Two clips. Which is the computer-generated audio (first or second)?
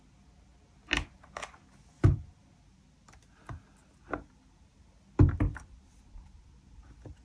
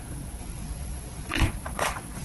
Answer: second